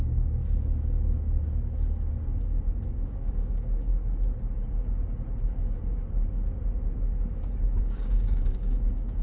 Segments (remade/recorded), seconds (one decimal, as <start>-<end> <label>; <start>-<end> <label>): 0.0-0.4 remade; 0.4-2.1 recorded; 2.1-3.9 remade; 3.9-7.8 recorded; 7.8-9.2 remade